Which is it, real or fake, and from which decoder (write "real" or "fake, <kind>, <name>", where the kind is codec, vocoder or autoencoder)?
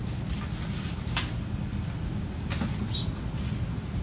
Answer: real